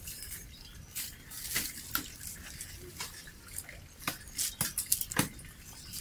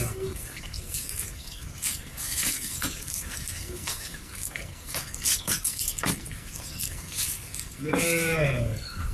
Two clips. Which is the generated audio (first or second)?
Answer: second